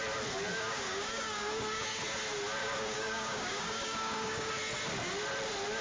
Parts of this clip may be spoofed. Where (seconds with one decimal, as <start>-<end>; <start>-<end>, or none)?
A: 0.5-2.0; 2.6-4.5